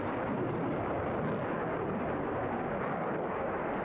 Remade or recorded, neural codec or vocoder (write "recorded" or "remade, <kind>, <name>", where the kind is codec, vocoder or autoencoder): recorded